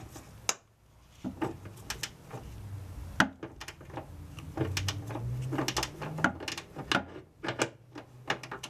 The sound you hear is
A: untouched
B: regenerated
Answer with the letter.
A